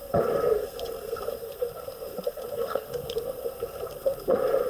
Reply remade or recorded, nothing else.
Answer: remade